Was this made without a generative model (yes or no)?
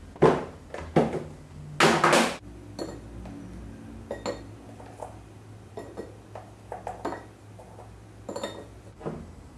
yes